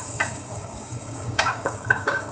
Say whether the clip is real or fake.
fake